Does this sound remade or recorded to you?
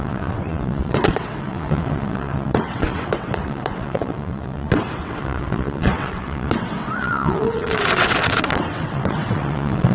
remade